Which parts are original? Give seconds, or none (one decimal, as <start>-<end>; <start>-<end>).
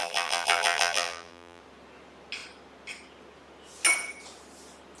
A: 1.6-5.0